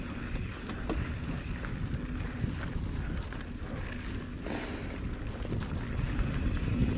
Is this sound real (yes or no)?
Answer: yes